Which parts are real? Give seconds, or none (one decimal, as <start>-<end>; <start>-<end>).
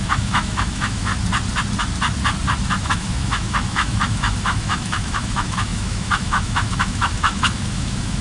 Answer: 1.1-2.8